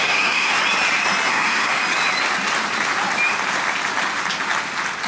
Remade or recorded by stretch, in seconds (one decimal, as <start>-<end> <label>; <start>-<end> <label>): 0.0-0.5 remade; 0.5-1.3 recorded; 1.3-1.8 remade; 1.8-5.1 recorded